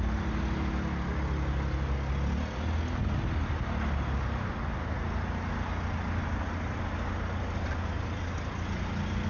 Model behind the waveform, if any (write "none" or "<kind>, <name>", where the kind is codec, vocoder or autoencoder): none